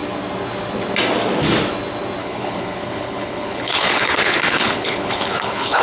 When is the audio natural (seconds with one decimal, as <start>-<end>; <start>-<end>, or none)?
0.0-2.2